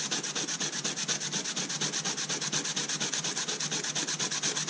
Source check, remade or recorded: recorded